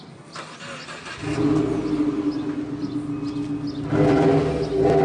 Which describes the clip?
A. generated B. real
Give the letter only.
B